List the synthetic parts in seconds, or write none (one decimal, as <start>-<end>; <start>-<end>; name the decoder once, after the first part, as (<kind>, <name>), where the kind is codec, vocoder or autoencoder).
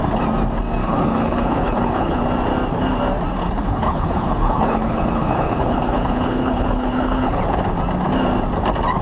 0.8-2.2 (codec, HILCodec); 3.4-7.4